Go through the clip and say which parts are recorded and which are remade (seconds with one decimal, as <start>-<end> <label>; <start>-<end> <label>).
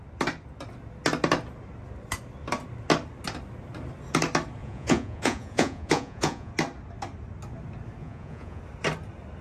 0.0-4.6 recorded; 4.6-6.5 remade; 6.5-8.0 recorded; 8.0-8.6 remade; 8.6-9.4 recorded